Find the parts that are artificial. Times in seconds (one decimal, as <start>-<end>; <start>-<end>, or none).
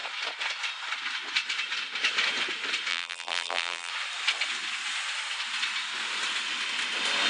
2.9-3.9